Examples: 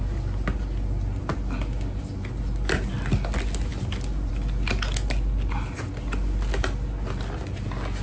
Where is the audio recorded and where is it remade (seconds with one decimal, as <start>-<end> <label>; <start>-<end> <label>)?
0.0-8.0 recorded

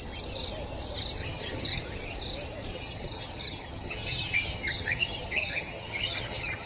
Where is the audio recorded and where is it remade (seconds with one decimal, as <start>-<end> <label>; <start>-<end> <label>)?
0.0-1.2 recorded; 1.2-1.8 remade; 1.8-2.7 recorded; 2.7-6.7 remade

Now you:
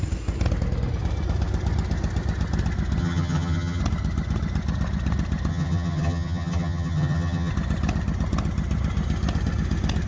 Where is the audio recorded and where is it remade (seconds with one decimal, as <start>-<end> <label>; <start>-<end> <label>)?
0.0-3.0 recorded; 3.0-3.8 remade; 3.8-5.5 recorded; 5.5-7.5 remade; 7.5-10.1 recorded

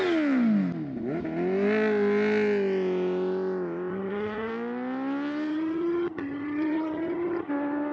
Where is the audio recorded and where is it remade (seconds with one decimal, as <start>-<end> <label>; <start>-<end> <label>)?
0.0-3.9 recorded; 3.9-4.5 remade; 4.5-5.5 recorded; 5.5-7.5 remade; 7.5-7.9 recorded

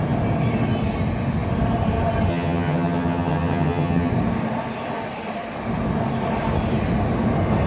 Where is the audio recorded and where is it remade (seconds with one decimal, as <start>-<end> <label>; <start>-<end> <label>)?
0.0-2.3 recorded; 2.3-4.1 remade; 4.1-7.7 recorded